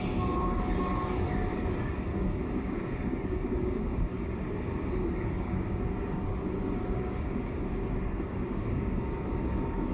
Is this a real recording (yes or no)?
no